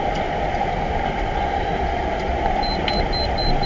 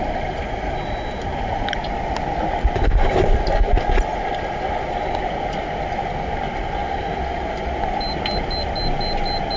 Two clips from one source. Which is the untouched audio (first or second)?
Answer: second